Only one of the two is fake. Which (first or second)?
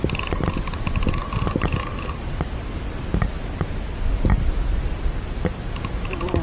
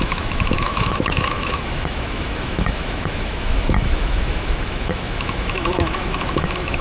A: second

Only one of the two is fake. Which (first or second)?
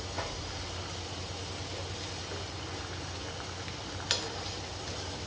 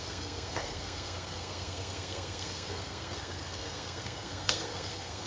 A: second